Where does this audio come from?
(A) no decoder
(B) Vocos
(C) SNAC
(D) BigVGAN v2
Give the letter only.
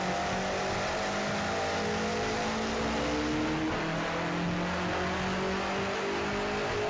A